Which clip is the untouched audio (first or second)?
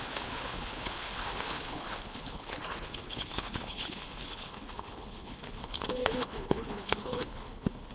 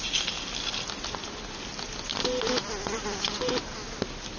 second